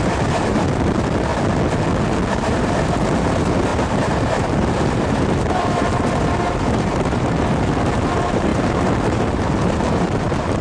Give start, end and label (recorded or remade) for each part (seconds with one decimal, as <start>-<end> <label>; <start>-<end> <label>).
0.0-1.3 remade; 1.3-2.3 recorded; 2.3-10.6 remade